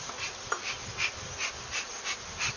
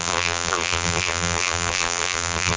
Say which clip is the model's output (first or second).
second